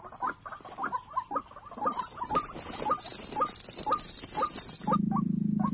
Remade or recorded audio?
recorded